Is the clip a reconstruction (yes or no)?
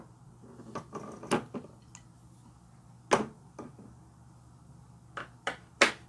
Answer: no